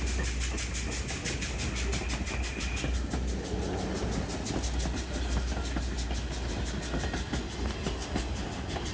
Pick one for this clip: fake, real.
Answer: real